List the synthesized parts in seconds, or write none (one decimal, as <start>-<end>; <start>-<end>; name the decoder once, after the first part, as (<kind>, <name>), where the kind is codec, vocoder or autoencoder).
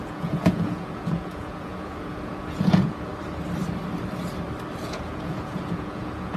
0.0-3.1 (vocoder, Vocos); 4.8-6.4